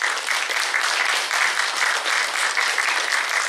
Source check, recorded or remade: recorded